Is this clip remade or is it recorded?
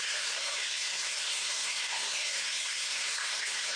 remade